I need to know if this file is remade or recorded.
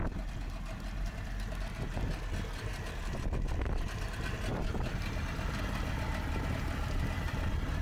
recorded